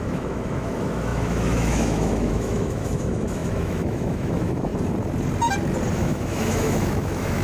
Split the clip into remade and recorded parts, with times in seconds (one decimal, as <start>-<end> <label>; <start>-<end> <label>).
0.0-4.7 remade; 4.7-5.9 recorded; 5.9-7.4 remade